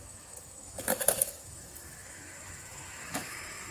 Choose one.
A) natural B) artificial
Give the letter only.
B